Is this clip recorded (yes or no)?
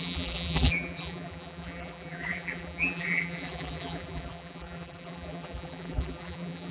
no